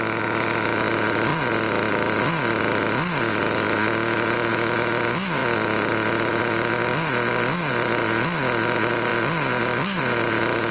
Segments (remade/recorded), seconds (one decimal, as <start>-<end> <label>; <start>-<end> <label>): 0.0-10.7 recorded